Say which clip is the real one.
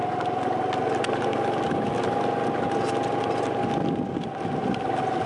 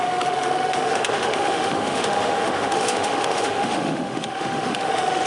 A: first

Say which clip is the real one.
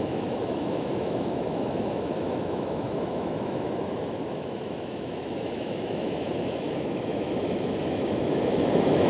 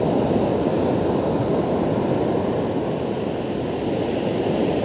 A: second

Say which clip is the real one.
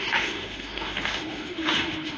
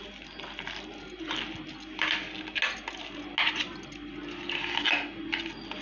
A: second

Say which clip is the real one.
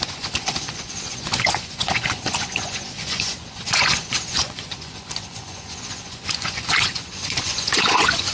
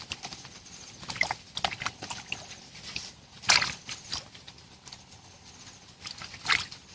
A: second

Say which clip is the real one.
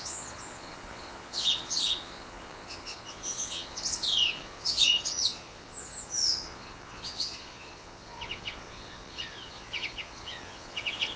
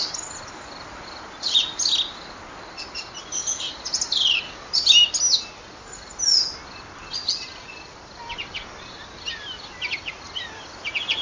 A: second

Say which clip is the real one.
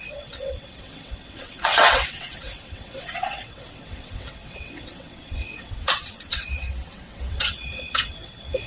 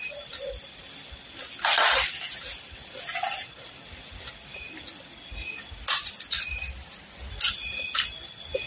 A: second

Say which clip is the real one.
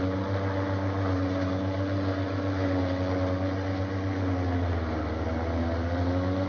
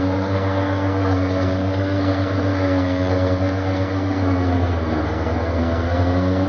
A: first